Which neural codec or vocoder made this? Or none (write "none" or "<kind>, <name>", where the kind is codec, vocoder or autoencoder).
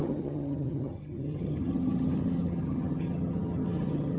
vocoder, HiFi-GAN